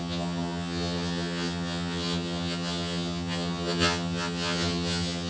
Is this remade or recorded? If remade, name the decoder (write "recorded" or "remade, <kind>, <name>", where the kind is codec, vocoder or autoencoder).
remade, vocoder, HiFi-GAN